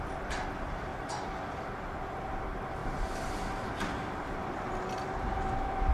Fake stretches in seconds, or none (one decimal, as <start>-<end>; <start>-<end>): none

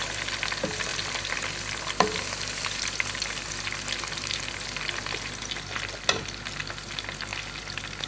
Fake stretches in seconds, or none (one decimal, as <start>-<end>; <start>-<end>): 0.9-3.5

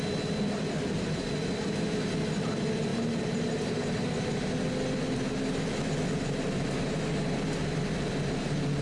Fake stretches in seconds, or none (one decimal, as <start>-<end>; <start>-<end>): 2.9-4.1